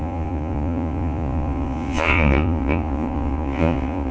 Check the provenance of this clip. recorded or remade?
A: remade